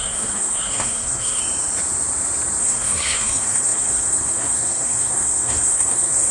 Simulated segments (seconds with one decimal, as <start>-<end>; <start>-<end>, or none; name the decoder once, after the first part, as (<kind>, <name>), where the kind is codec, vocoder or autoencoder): 0.0-1.4 (codec, SNAC); 2.6-6.3